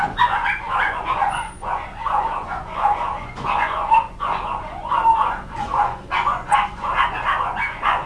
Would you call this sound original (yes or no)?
no